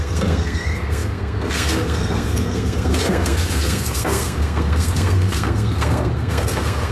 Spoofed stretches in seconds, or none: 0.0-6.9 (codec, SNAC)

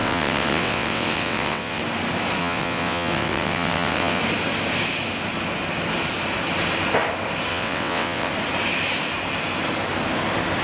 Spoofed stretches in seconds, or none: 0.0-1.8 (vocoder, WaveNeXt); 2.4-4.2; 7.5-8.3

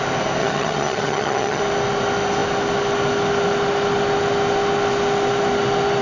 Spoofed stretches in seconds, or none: 0.4-1.6 (vocoder, HiFi-GAN)